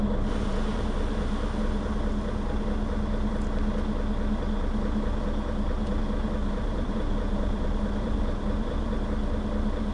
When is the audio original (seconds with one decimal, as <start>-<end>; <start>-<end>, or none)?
0.0-6.4; 9.0-9.9